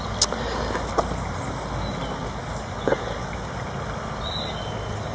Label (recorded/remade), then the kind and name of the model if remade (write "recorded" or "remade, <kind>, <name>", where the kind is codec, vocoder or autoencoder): recorded